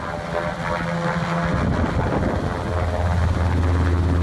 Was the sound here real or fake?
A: real